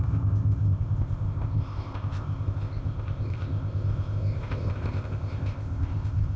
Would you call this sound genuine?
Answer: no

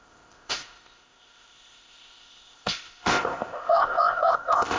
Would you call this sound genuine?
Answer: no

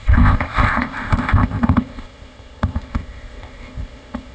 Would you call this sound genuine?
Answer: no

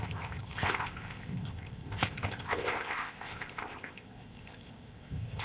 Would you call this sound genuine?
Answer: no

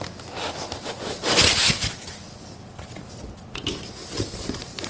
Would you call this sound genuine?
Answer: yes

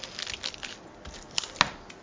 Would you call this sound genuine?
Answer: yes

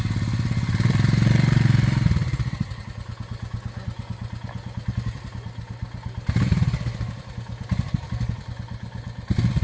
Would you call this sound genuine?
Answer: yes